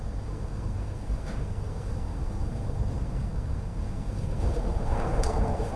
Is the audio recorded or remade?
remade